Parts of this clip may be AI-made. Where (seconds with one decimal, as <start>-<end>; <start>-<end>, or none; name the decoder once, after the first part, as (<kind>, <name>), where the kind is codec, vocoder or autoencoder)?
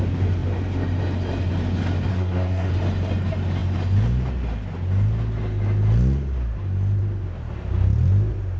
2.1-2.7 (codec, SNAC)